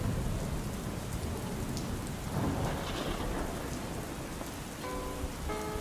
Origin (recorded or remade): recorded